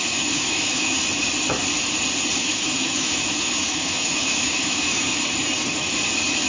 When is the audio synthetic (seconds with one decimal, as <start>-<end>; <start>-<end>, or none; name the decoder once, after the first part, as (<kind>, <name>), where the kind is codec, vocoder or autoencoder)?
0.0-1.0 (autoencoder, DAC-VAE); 2.4-5.2